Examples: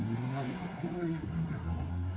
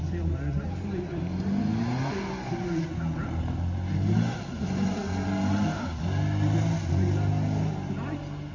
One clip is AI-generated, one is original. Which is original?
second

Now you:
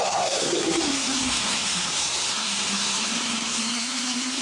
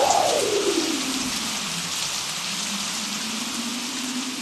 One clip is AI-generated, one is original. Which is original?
second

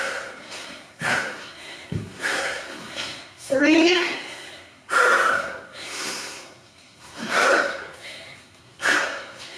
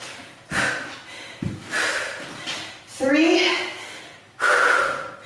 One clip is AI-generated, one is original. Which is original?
second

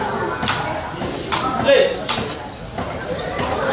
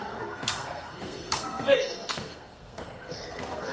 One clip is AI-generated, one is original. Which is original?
first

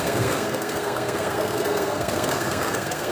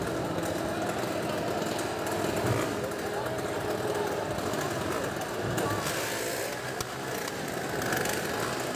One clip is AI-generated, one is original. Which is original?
second